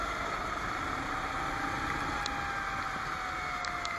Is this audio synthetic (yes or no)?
no